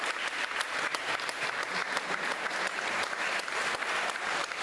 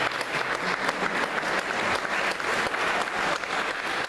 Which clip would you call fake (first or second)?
first